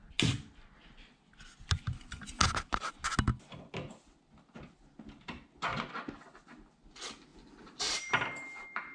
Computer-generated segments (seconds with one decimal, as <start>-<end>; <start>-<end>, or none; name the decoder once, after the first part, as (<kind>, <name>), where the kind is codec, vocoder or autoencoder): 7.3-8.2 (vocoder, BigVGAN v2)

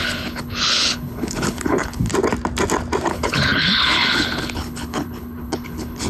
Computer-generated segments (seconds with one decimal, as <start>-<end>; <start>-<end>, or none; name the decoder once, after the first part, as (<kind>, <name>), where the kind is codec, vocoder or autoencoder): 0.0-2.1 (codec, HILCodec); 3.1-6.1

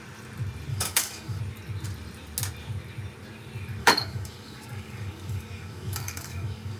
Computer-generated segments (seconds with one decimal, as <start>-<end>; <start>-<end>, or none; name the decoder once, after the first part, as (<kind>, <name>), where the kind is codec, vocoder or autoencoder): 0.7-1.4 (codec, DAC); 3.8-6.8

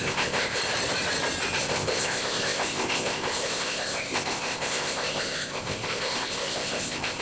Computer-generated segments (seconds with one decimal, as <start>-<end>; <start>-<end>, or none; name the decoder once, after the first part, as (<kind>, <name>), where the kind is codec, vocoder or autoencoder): 0.0-0.6 (codec, ZipCodec); 1.6-7.2